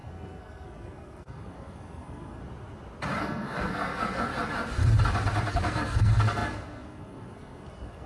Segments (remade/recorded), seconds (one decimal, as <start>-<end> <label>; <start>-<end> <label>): 0.0-2.4 remade; 2.4-3.2 recorded; 3.2-4.3 remade; 4.3-5.5 recorded; 5.5-8.1 remade